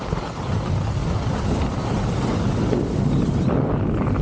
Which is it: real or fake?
real